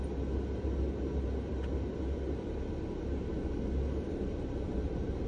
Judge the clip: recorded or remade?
recorded